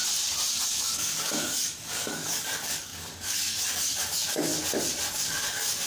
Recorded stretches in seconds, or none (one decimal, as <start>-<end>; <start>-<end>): 0.0-0.7; 4.5-5.1